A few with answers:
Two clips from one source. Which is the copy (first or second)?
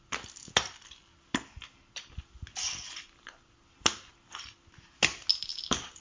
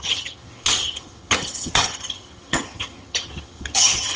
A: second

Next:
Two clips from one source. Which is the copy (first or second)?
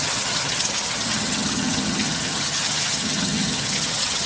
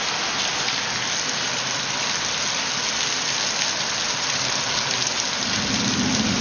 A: first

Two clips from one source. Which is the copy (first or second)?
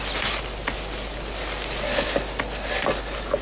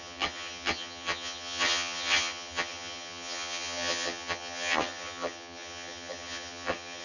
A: second